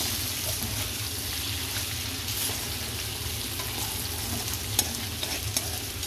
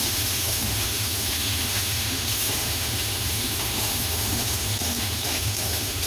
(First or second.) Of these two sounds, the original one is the first